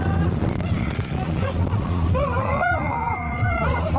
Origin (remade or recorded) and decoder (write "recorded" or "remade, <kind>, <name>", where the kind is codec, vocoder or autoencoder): remade, vocoder, Vocos